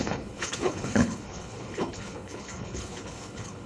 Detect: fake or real fake